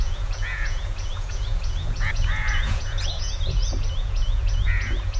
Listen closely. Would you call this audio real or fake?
fake